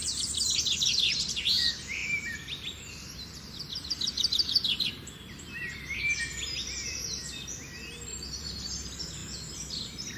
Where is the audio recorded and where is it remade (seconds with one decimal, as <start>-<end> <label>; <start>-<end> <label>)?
0.0-7.2 remade; 7.2-8.3 recorded; 8.3-10.2 remade